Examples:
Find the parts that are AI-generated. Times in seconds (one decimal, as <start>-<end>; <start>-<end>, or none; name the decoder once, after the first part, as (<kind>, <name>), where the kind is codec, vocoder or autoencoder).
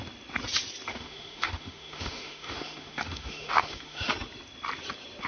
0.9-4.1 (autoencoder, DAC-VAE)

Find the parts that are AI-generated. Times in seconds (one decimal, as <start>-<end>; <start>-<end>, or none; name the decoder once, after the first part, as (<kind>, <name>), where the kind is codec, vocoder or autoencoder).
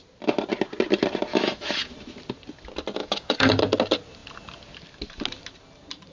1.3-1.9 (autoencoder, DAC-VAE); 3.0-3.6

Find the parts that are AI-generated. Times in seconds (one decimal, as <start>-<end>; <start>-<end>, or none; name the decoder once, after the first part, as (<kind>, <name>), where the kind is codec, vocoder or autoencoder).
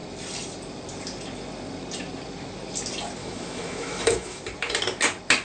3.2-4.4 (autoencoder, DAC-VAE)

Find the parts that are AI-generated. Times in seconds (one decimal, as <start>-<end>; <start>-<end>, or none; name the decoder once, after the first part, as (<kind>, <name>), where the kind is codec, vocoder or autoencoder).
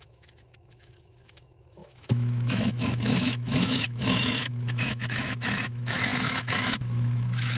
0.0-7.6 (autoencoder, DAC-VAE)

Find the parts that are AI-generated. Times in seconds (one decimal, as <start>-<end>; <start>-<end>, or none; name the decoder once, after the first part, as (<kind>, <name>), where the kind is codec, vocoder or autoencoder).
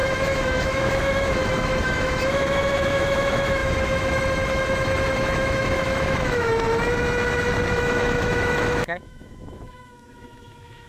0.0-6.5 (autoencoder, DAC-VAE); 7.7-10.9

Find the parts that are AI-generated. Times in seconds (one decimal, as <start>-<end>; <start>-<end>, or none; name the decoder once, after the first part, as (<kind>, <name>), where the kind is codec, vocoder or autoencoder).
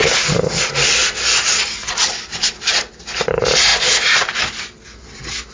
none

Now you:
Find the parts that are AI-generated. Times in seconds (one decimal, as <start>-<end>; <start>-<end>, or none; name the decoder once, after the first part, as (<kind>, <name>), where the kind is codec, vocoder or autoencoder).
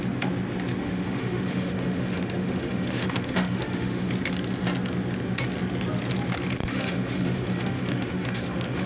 0.8-4.1 (autoencoder, DAC-VAE); 6.6-8.9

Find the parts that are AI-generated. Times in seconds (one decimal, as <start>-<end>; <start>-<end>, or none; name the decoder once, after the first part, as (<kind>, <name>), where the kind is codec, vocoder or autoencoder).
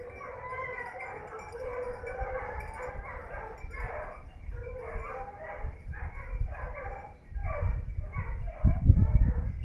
none